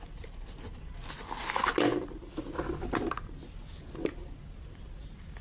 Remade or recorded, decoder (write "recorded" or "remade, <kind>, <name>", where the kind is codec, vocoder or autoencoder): recorded